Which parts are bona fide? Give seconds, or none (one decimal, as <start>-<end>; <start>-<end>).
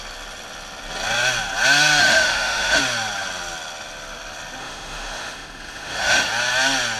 0.0-2.0; 2.8-4.6; 6.3-7.0